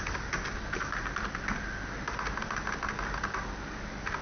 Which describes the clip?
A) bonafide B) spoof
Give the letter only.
A